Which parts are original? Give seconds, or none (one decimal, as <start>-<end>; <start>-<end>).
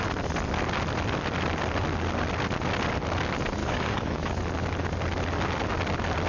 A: 0.0-3.6; 4.4-6.3